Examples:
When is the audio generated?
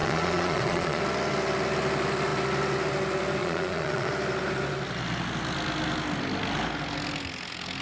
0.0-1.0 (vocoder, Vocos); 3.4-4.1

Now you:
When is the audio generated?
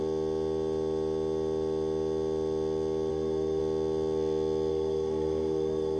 3.1-3.6 (codec, SNAC); 4.7-6.0